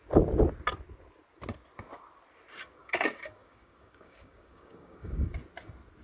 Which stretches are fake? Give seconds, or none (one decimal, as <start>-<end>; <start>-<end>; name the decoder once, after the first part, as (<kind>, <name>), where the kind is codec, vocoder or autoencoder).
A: 2.8-5.4 (codec, DAC)